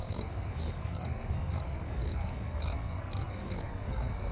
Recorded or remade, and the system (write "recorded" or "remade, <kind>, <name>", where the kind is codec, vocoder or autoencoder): remade, codec, SNAC